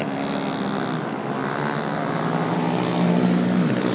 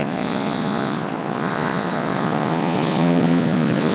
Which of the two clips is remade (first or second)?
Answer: second